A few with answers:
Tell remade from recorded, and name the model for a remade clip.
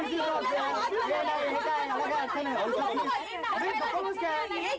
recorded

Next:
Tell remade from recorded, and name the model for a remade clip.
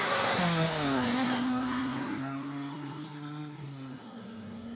remade, codec, SNAC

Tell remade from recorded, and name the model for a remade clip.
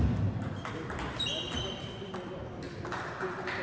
recorded